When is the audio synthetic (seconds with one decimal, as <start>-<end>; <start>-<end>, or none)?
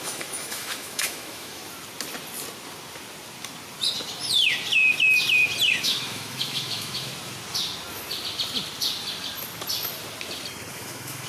0.0-1.6; 5.8-7.1; 10.7-11.3